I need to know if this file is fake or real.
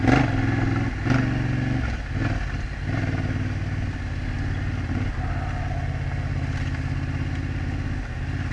real